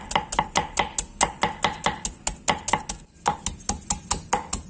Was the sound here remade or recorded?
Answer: recorded